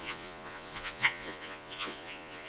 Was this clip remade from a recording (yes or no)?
yes